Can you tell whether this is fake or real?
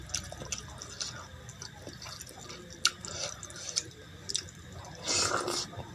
real